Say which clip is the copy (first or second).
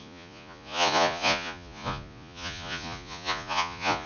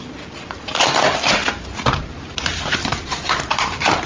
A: first